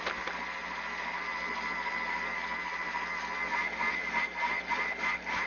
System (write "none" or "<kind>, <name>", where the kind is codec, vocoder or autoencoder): none